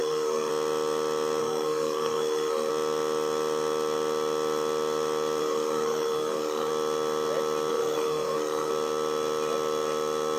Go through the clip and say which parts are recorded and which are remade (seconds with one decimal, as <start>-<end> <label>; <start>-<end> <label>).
0.0-0.5 remade; 0.5-1.4 recorded; 1.4-2.7 remade; 2.7-5.4 recorded; 5.4-6.7 remade; 6.7-7.7 recorded; 7.7-8.7 remade; 8.7-10.4 recorded